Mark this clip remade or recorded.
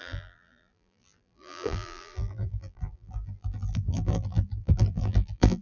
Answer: remade